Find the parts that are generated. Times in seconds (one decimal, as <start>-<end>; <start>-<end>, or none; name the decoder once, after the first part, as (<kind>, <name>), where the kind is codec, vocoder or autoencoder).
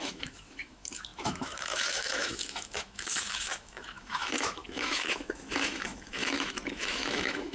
0.0-7.5 (autoencoder, DAC-VAE)